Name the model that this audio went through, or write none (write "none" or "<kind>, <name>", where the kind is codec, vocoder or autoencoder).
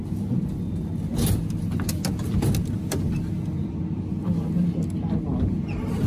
none